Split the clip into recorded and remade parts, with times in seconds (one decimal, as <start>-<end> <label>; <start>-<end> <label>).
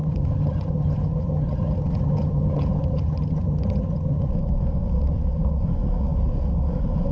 0.0-4.3 remade; 4.3-7.1 recorded